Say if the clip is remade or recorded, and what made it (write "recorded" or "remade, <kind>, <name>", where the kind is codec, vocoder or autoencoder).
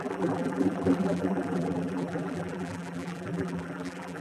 remade, vocoder, BigVGAN v2